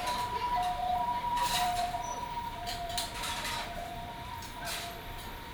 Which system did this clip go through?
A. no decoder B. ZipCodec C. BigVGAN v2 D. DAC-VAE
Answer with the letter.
C